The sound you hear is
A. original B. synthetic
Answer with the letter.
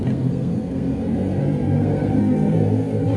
B